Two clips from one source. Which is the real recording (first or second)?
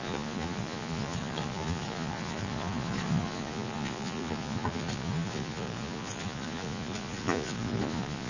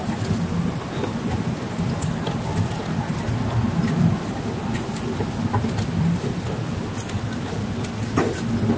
second